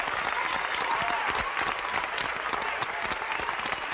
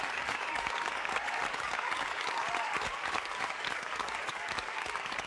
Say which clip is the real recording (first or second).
first